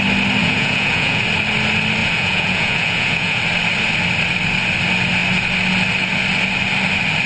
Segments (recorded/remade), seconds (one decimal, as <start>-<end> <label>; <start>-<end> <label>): 0.0-0.4 recorded; 0.4-1.2 remade; 1.2-2.0 recorded; 2.0-3.4 remade; 3.4-7.3 recorded